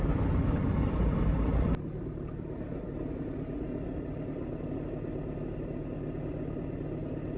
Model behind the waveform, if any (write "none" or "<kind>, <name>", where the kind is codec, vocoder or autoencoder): none